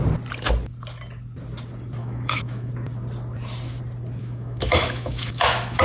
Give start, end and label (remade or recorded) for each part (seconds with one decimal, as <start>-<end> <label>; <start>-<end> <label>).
0.0-2.0 recorded; 2.0-2.7 remade; 2.7-4.2 recorded; 4.2-5.8 remade